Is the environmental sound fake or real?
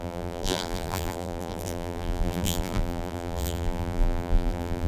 fake